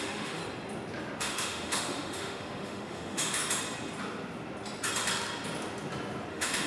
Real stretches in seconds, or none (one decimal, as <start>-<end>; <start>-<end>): 0.4-1.2; 3.4-6.3

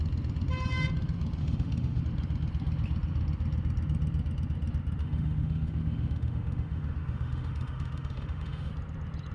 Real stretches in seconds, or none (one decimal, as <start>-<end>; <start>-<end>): 0.0-1.4; 2.0-5.0; 8.7-9.3

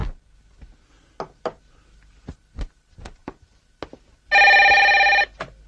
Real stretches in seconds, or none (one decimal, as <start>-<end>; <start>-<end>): 0.0-5.7

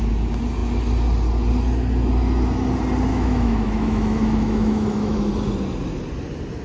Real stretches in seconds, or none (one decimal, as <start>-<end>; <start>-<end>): 0.0-3.1; 5.3-6.6

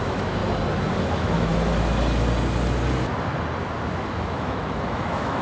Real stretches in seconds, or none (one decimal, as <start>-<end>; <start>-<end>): 0.4-1.0; 1.5-3.9